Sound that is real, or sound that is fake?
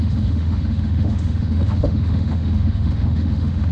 fake